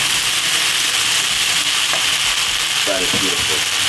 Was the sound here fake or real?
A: real